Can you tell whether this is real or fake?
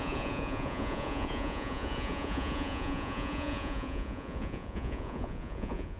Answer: fake